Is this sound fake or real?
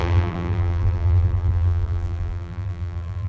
fake